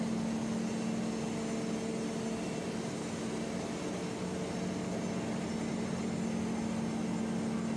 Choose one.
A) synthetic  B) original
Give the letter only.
B